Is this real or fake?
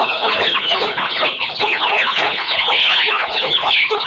fake